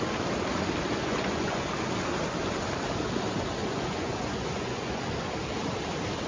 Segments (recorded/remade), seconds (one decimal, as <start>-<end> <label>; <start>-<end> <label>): 0.0-1.0 recorded; 1.0-1.7 remade; 1.7-3.6 recorded; 3.6-5.0 remade; 5.0-6.3 recorded